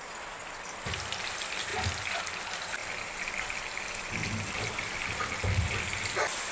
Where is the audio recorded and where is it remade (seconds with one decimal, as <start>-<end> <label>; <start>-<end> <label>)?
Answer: 0.0-6.5 recorded